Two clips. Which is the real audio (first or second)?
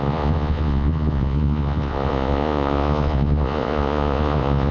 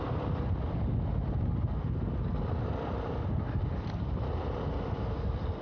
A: second